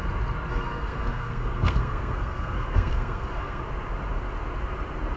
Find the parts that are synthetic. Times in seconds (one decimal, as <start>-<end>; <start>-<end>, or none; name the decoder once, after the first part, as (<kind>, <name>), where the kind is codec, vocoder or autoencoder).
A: 0.5-3.6 (codec, SNAC)